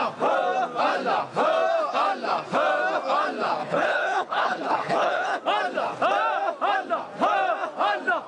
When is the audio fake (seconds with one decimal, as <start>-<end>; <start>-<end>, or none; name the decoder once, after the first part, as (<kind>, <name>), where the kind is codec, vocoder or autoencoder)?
3.6-5.4 (codec, HILCodec)